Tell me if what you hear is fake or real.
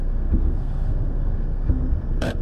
fake